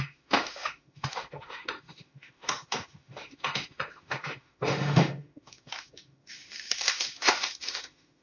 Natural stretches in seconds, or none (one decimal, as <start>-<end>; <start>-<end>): none